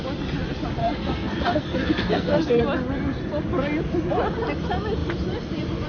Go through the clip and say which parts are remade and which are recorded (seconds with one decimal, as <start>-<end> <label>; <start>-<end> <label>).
0.0-0.8 recorded; 0.8-2.6 remade; 2.6-5.9 recorded

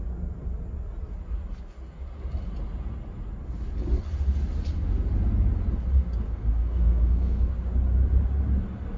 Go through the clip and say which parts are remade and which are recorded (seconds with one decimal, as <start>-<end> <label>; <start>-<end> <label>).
0.0-6.3 recorded; 6.3-7.5 remade; 7.5-9.0 recorded

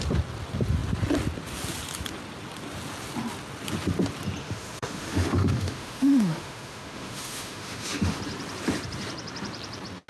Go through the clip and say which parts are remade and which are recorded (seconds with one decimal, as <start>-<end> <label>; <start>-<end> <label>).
0.0-4.4 recorded; 4.4-8.2 remade; 8.2-10.1 recorded